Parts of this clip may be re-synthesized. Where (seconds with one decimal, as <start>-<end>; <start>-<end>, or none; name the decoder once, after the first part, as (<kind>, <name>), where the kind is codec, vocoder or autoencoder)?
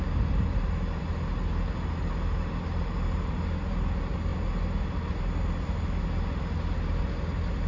none